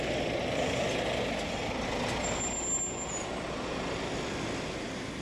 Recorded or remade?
recorded